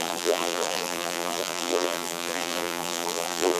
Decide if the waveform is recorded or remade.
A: remade